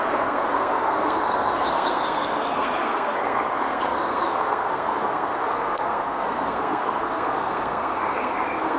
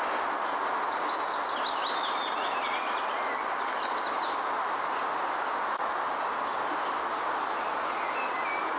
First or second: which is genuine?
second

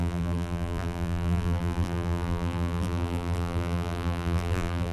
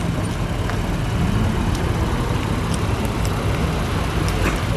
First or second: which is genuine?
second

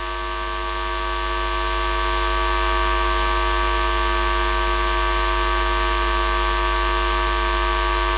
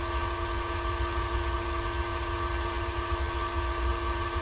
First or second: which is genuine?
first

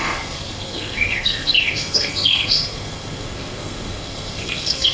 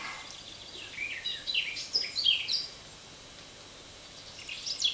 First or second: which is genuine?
second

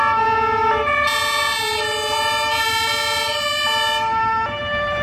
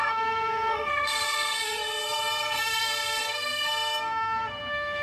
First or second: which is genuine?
first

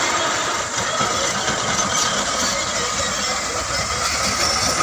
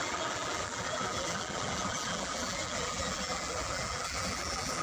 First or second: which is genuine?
first